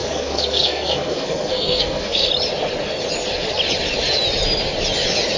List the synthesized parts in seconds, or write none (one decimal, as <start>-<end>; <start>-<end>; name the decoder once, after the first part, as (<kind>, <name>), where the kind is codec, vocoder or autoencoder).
0.0-2.3 (codec, SNAC)